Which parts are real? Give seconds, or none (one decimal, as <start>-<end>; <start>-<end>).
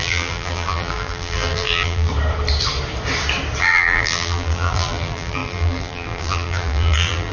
2.1-3.6